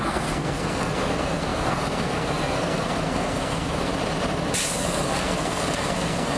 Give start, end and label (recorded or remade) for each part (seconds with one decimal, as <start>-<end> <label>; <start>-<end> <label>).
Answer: 0.0-3.9 remade; 3.9-4.8 recorded; 4.8-6.4 remade

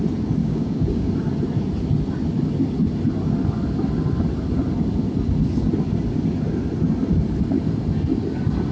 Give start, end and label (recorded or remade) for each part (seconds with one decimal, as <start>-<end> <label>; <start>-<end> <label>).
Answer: 0.0-0.4 recorded; 0.4-1.1 remade; 1.1-8.7 recorded

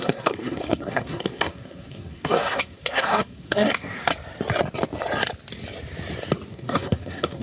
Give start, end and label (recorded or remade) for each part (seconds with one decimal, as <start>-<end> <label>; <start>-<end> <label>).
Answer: 0.0-4.1 remade; 4.1-6.5 recorded; 6.5-7.4 remade

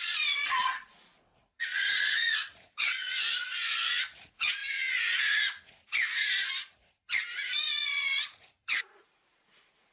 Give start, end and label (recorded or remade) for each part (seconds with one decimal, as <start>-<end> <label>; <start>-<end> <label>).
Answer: 0.0-9.9 remade